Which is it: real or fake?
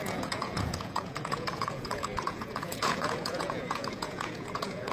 fake